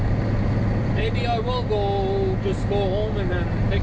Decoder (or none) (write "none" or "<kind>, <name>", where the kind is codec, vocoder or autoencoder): none